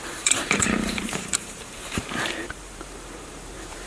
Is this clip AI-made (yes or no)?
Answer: yes